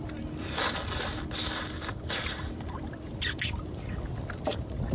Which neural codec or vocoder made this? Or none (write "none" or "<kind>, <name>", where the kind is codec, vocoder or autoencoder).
vocoder, BigVGAN v2